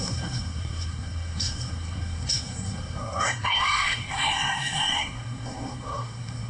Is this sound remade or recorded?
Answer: remade